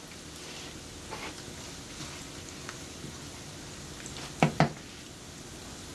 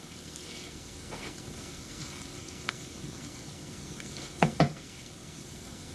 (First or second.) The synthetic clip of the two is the second